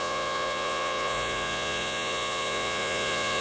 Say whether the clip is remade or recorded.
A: remade